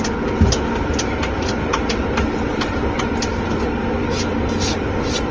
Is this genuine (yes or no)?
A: yes